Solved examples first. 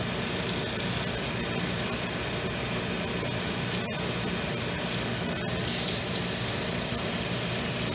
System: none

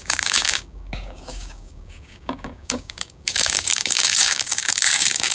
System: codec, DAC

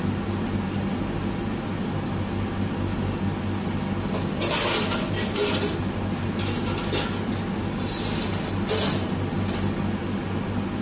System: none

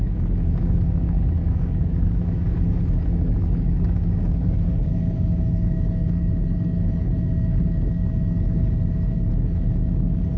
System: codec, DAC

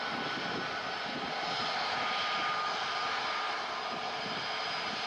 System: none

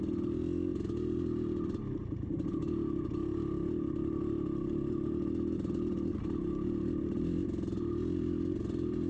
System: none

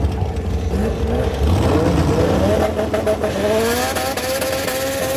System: none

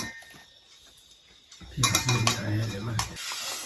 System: none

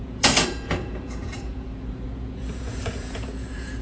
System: vocoder, Vocos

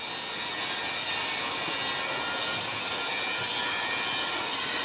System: none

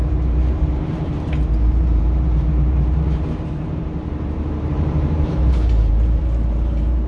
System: vocoder, BigVGAN v2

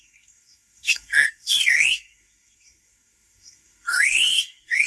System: codec, SNAC